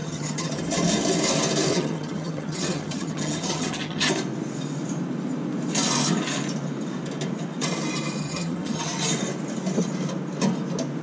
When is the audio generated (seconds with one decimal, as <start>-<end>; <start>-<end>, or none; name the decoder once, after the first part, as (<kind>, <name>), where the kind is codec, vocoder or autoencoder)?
0.0-0.6 (vocoder, HiFi-GAN); 1.7-4.1; 8.2-8.9